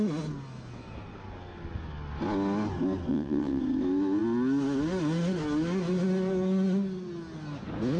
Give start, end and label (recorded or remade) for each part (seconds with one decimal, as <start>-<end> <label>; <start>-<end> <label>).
0.0-3.1 recorded; 3.1-3.6 remade; 3.6-8.0 recorded